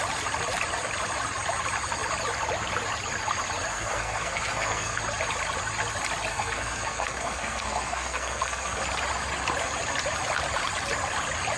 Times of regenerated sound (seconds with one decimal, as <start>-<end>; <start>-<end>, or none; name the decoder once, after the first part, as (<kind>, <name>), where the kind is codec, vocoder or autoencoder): 3.7-5.0 (codec, SNAC); 6.3-8.8